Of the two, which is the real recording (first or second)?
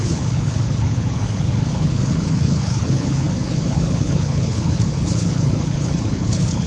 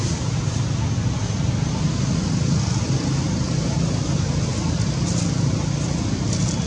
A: second